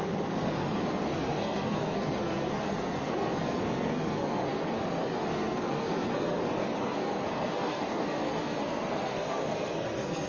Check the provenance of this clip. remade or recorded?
remade